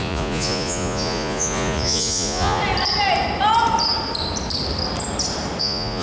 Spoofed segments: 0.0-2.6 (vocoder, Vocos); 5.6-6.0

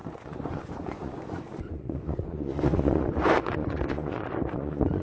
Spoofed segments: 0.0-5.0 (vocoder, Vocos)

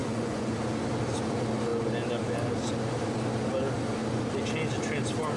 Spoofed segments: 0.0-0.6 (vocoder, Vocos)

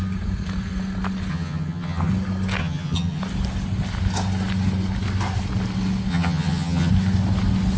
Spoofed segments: 1.3-2.1 (vocoder, HiFi-GAN); 2.6-3.2; 6.1-6.9

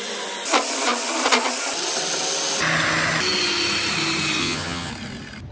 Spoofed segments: 4.4-4.9 (vocoder, HiFi-GAN)